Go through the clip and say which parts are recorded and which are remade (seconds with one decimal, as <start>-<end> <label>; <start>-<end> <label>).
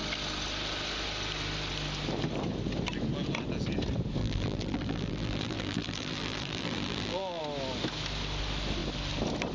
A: 0.0-4.2 recorded; 4.2-7.4 remade; 7.4-9.5 recorded